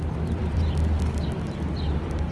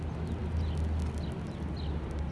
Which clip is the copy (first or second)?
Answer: first